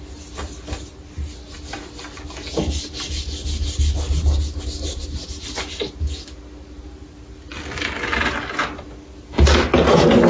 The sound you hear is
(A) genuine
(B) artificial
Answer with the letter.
A